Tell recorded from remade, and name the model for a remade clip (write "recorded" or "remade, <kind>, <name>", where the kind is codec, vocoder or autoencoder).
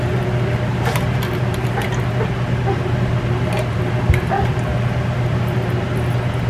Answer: recorded